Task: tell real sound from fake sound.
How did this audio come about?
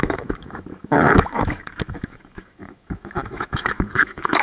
fake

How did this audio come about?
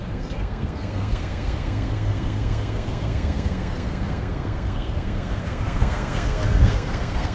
fake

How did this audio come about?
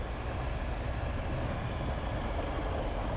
real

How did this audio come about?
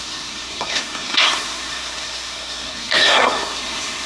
fake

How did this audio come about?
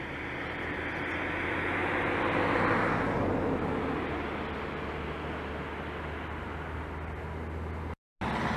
real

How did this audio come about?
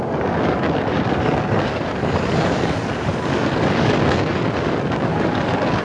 fake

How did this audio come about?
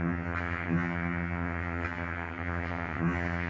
fake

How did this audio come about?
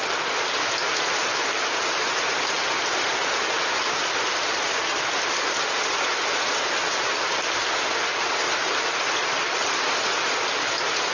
real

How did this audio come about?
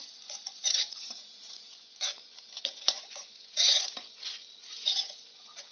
fake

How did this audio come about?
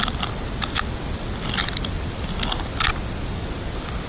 real